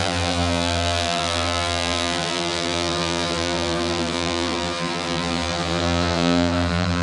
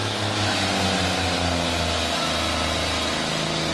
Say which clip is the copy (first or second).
first